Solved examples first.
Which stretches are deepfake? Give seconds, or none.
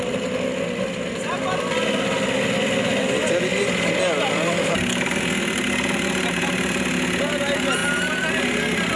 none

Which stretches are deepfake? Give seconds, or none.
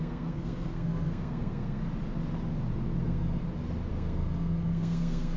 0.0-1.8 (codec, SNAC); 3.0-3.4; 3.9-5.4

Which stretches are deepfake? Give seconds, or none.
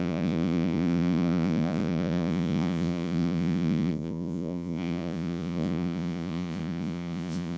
0.0-7.6 (vocoder, Vocos)